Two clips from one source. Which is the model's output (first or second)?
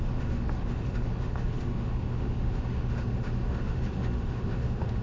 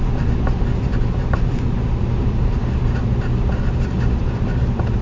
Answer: first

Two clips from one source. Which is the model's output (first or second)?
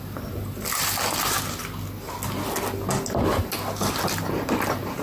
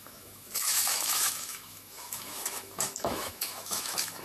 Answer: second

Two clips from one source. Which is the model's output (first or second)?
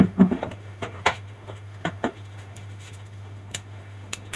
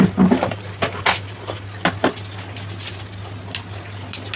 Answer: first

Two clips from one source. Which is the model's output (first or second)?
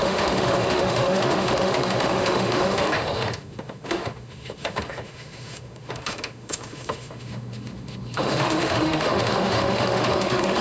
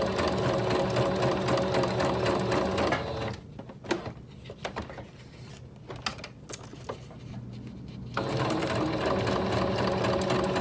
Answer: first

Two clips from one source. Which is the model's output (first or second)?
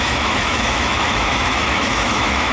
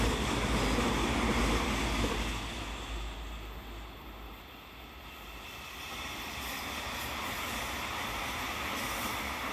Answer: first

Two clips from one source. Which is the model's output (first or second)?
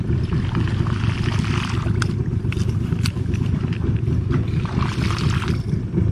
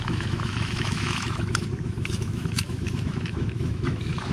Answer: second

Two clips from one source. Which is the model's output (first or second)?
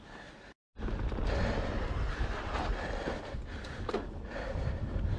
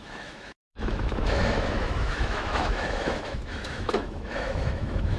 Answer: second